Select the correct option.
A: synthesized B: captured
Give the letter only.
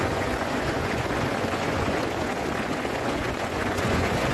A